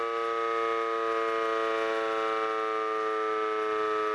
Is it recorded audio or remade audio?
recorded